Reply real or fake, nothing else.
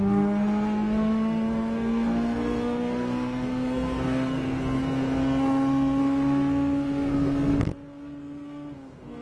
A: fake